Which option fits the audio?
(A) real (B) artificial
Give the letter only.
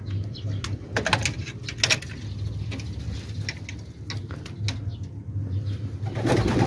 A